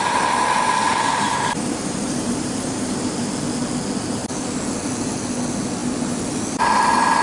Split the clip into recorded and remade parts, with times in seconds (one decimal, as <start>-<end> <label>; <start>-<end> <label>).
0.0-0.9 recorded; 0.9-3.3 remade; 3.3-7.2 recorded